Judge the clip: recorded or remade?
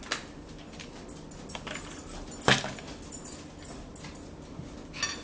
recorded